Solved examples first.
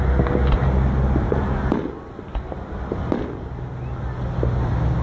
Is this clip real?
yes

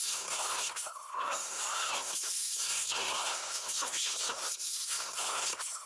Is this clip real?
no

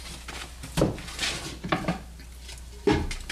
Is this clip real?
yes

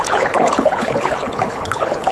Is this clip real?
no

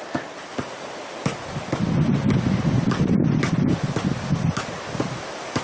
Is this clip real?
yes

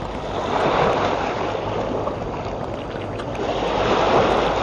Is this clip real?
yes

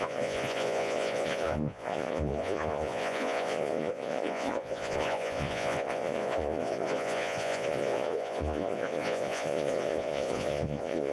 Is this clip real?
no